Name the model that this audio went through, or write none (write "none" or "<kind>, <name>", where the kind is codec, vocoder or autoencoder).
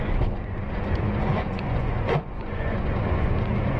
vocoder, Vocos